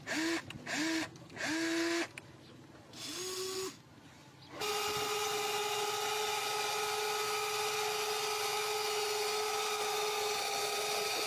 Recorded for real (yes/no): yes